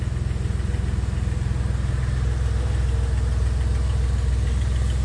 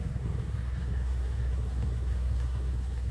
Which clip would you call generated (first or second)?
second